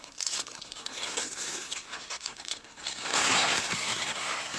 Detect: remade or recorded remade